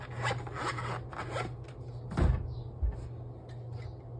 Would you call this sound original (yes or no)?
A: yes